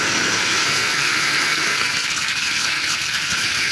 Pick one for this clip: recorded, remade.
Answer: remade